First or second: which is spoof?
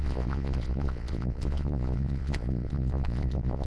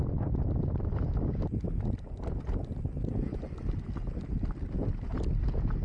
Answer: first